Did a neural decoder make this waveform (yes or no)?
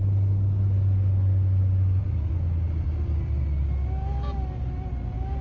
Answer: no